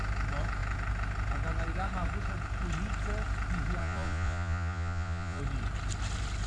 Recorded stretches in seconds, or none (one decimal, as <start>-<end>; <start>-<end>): 0.0-3.8; 5.4-6.5

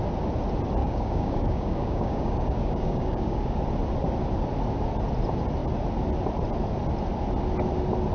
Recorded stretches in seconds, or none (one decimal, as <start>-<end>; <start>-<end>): 0.0-0.8; 3.6-8.1

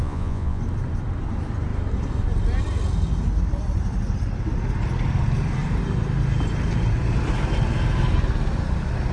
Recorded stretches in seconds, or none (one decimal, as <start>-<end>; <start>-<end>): 0.6-9.1

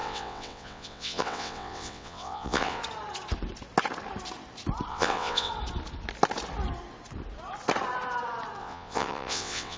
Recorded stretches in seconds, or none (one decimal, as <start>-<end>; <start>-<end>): 2.8-4.9; 5.5-8.6